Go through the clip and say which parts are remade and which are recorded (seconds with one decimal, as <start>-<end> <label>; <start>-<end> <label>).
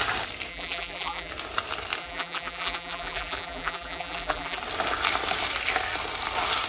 0.0-0.5 recorded; 0.5-1.3 remade; 1.3-2.0 recorded; 2.0-4.6 remade; 4.6-6.7 recorded